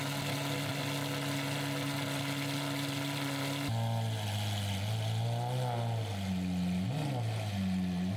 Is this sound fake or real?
real